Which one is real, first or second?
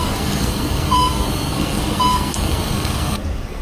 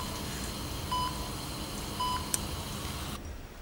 second